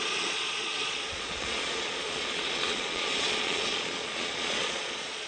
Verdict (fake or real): fake